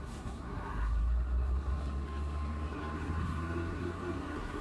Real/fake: fake